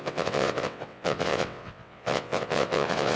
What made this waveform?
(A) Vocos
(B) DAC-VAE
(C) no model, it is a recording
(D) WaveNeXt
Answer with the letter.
D